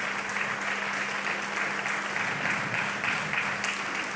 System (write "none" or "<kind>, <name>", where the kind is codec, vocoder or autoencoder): none